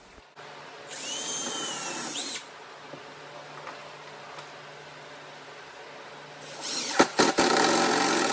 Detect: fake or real real